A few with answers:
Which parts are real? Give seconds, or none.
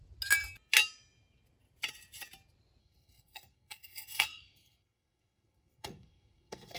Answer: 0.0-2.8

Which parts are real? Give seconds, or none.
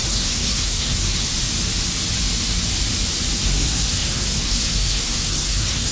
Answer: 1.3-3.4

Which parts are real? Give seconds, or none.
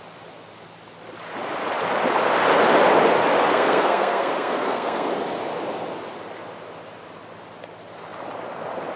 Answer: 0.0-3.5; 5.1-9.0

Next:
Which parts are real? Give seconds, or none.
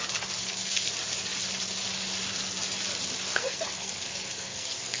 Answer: 0.0-0.4; 0.9-3.4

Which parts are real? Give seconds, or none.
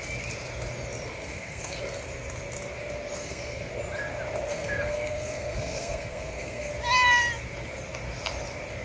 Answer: 0.0-1.1; 1.8-3.2; 3.7-4.5; 6.7-8.8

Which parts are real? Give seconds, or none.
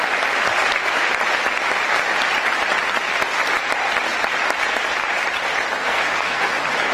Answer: 0.0-5.8; 6.5-6.9